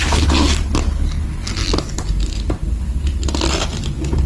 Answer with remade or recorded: recorded